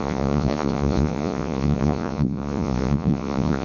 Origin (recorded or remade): remade